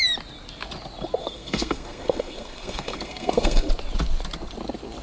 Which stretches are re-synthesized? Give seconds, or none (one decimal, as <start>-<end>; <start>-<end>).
1.2-3.7